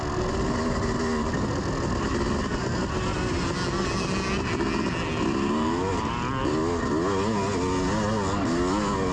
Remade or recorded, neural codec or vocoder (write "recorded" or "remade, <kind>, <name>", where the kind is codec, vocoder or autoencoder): recorded